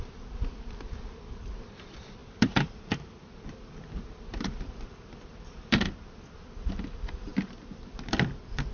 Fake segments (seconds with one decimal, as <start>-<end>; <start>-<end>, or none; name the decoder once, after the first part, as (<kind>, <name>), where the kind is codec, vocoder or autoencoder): 0.0-7.3 (vocoder, BigVGAN v2)